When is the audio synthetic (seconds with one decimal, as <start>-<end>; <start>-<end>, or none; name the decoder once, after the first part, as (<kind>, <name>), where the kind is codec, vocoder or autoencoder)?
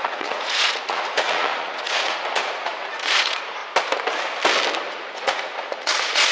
0.0-3.6 (vocoder, Vocos); 4.9-6.3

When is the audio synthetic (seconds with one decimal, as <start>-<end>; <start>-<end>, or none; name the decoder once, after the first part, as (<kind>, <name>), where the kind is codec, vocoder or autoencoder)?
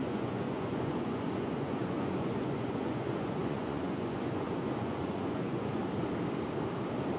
0.0-5.8 (vocoder, Vocos)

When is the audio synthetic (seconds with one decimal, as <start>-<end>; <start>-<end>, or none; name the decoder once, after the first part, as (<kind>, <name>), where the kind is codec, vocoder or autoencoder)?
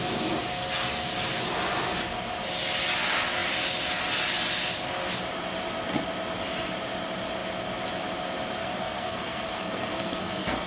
8.6-10.7 (codec, SNAC)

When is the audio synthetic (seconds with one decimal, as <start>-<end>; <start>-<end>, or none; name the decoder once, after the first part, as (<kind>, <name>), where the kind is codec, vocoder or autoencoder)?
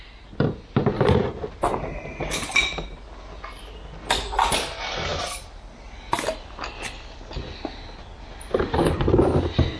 none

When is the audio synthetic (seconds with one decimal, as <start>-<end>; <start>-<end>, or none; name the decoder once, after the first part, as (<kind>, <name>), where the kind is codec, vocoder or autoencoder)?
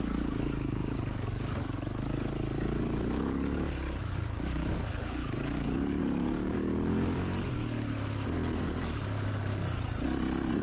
0.0-7.9 (codec, DAC)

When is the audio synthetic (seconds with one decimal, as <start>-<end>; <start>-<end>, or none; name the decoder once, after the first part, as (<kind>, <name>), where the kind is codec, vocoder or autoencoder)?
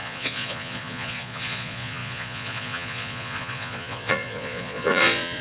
0.0-5.4 (vocoder, Vocos)